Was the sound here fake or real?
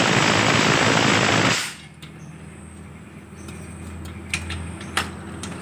real